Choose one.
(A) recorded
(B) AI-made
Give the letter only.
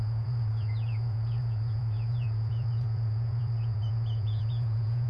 B